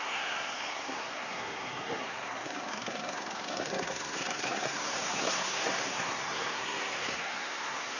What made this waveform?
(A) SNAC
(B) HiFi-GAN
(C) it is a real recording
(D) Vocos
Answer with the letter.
A